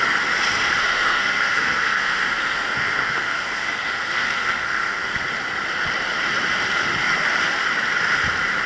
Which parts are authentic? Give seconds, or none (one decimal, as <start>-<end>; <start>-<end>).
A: 0.0-0.8; 5.2-8.7